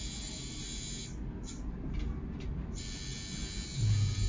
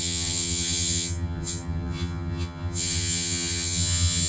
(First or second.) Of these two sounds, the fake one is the second